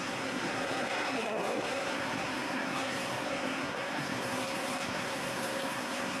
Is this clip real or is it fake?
fake